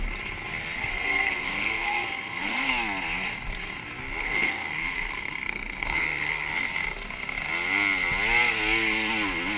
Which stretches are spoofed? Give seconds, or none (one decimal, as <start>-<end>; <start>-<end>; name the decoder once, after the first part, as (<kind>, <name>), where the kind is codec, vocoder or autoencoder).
0.9-2.7 (codec, SNAC); 4.2-6.5